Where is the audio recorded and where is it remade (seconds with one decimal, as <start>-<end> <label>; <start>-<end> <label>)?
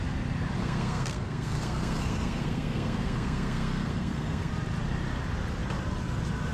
0.0-0.6 recorded; 0.6-4.5 remade; 4.5-6.5 recorded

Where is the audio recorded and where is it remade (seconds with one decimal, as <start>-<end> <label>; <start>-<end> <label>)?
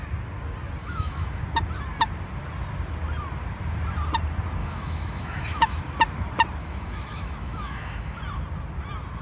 0.0-0.8 recorded; 0.8-1.4 remade; 1.4-4.6 recorded; 4.6-5.8 remade; 5.8-6.6 recorded; 6.6-8.2 remade; 8.2-9.2 recorded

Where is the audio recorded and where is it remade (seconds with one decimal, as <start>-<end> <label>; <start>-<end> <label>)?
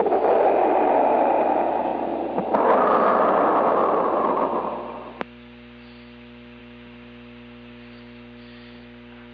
0.0-9.3 recorded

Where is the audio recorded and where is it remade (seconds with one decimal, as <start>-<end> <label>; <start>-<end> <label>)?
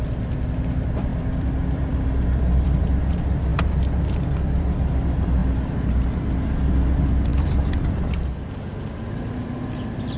0.0-1.1 recorded; 1.1-2.8 remade; 2.8-3.5 recorded; 3.5-4.9 remade; 4.9-7.3 recorded; 7.3-7.9 remade; 7.9-10.2 recorded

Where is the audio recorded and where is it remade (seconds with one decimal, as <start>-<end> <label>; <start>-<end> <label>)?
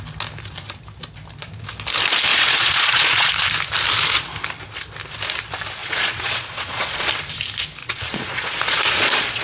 0.0-2.3 recorded; 2.3-3.3 remade; 3.3-5.8 recorded; 5.8-7.1 remade; 7.1-7.8 recorded; 7.8-9.4 remade